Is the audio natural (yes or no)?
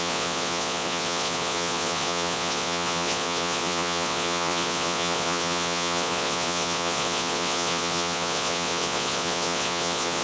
no